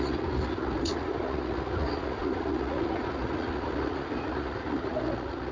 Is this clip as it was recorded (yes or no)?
no